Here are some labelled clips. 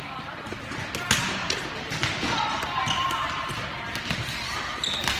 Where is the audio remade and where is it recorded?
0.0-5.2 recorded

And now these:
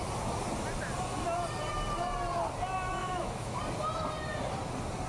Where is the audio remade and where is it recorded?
0.0-3.0 recorded; 3.0-3.6 remade; 3.6-5.1 recorded

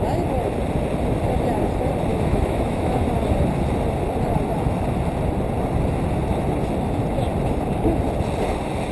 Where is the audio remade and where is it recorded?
0.0-2.1 recorded; 2.1-3.0 remade; 3.0-8.9 recorded